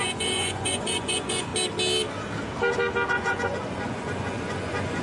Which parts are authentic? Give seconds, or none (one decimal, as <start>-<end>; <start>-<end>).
1.5-3.1